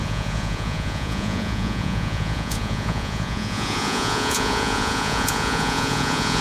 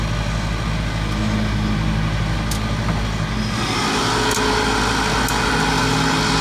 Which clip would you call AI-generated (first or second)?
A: first